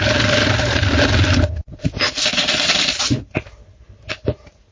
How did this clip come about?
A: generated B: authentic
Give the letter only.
A